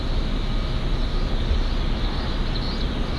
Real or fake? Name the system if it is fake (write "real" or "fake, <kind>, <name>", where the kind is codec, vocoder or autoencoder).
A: real